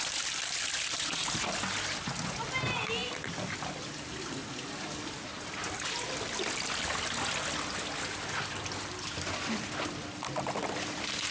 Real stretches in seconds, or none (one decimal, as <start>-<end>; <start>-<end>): 0.0-11.3